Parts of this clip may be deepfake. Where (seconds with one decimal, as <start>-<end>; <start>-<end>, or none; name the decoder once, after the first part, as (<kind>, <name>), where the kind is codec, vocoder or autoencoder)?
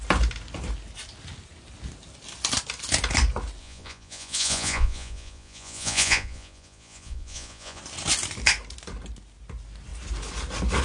3.6-7.8 (vocoder, Vocos)